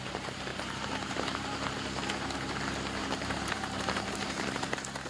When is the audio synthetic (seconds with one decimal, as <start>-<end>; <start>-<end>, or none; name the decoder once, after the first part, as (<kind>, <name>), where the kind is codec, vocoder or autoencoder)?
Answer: 0.5-2.6 (vocoder, BigVGAN v2); 3.0-4.1

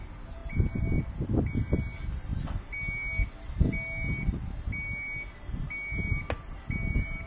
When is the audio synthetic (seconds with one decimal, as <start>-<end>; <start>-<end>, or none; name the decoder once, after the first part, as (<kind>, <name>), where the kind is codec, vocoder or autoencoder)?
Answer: none

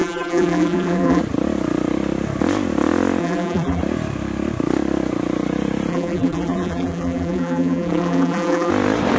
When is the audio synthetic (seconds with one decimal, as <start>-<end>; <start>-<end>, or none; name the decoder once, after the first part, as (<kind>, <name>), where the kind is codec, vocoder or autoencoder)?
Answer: 0.0-1.2 (vocoder, BigVGAN v2); 3.2-3.8; 5.9-8.7

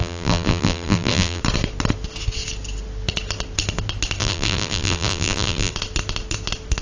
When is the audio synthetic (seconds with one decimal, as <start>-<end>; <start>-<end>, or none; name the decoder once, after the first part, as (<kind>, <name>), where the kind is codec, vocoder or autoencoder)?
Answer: 0.0-1.4 (vocoder, BigVGAN v2); 4.2-5.7

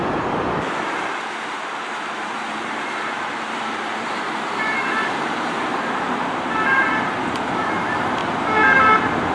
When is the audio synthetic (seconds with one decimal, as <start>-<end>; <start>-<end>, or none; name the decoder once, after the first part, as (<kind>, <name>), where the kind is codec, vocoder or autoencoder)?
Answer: 0.0-8.2 (vocoder, BigVGAN v2)

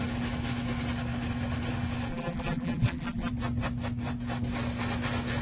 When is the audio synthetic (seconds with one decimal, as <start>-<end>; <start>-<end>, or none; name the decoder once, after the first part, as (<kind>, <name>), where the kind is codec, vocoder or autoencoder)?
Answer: 2.1-3.3 (vocoder, BigVGAN v2)

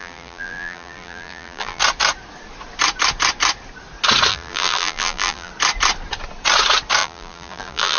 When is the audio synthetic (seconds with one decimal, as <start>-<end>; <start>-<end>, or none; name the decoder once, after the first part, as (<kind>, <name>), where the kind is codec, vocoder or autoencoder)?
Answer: 0.0-1.8 (vocoder, BigVGAN v2); 4.3-5.5; 7.0-8.0

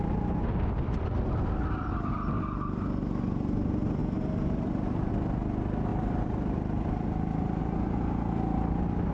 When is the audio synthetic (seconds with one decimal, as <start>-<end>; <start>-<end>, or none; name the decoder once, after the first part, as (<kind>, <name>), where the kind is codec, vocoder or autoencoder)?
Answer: 4.0-5.1 (vocoder, BigVGAN v2); 5.9-7.6